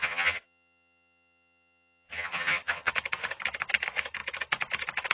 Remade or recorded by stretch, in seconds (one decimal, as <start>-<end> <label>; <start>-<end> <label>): 0.0-2.9 remade; 2.9-5.1 recorded